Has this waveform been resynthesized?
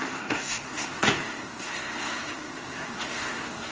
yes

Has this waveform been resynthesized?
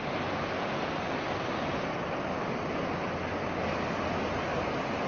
no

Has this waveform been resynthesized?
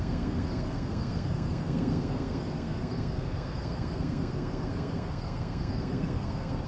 yes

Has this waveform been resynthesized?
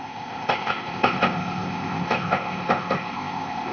yes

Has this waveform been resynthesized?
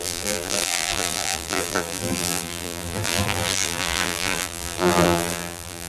yes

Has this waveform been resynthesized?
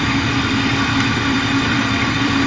yes